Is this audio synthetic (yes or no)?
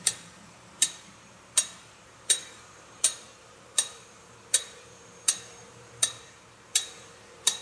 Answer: yes